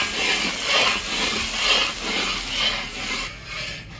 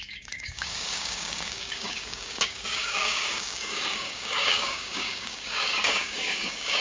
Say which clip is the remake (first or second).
second